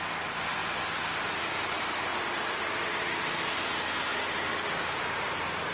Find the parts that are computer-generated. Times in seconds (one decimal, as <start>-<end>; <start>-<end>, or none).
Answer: 0.6-1.3; 2.1-3.6